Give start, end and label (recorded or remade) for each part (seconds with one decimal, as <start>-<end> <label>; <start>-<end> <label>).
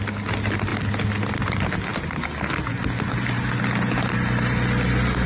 0.0-5.3 recorded